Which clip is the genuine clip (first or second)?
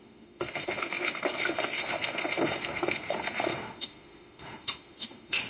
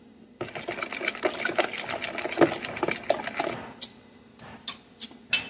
second